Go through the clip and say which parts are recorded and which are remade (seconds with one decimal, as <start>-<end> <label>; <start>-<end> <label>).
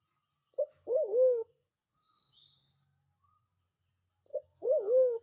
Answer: 0.0-0.7 recorded; 0.7-2.7 remade; 2.7-4.3 recorded; 4.3-5.2 remade